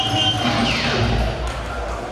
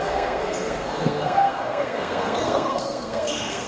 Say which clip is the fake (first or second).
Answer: second